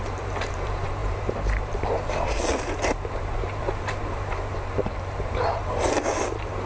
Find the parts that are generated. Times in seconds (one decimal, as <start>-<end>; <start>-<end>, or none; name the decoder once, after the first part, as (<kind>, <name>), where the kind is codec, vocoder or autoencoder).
0.0-6.7 (vocoder, BigVGAN v2)